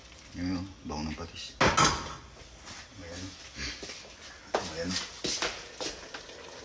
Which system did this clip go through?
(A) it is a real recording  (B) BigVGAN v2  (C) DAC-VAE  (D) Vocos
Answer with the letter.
A